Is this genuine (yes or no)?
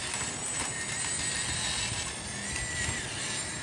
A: yes